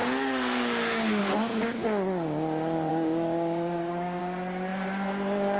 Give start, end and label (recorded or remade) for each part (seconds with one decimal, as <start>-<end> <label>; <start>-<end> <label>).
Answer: 0.0-1.2 remade; 1.2-2.9 recorded; 2.9-4.2 remade; 4.2-5.6 recorded